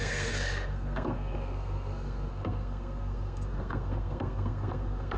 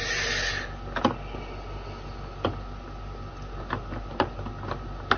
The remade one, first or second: first